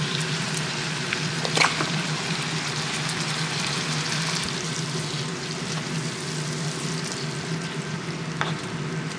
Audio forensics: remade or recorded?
remade